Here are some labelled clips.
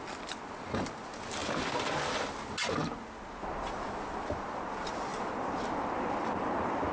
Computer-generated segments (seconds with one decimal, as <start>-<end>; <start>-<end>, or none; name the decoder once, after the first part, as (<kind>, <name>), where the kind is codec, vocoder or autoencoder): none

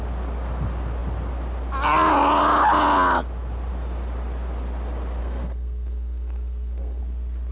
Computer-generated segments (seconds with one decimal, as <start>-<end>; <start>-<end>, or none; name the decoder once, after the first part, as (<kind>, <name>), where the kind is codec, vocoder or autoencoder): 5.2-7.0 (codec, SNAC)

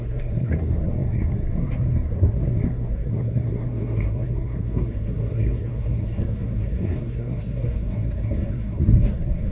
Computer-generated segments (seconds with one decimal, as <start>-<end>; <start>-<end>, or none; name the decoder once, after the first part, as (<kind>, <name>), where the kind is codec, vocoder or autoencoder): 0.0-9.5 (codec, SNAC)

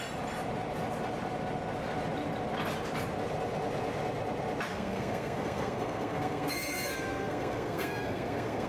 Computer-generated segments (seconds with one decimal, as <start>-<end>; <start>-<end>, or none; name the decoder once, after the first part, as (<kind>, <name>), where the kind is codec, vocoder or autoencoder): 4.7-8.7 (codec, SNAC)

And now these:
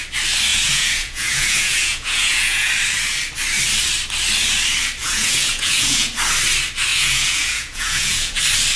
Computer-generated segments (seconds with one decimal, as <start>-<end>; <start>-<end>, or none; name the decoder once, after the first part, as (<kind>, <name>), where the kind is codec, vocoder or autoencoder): 0.5-2.7 (vocoder, Vocos); 5.0-6.1; 6.9-8.4

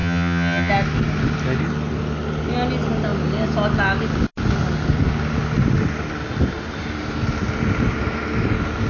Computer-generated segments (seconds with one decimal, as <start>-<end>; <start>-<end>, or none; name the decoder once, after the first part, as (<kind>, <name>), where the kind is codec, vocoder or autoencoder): 0.0-0.7 (vocoder, HiFi-GAN)

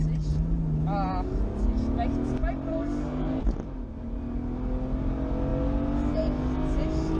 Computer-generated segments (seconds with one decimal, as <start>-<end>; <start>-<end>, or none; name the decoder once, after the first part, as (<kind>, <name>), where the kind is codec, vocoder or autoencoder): 2.7-3.4 (codec, SNAC)